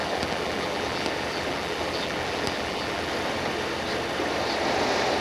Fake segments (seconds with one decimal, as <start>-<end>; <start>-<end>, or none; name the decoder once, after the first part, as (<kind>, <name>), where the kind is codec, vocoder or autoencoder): 0.0-3.1 (vocoder, BigVGAN v2)